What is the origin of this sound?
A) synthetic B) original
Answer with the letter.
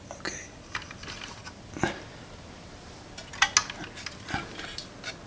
B